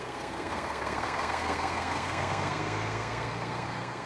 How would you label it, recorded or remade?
remade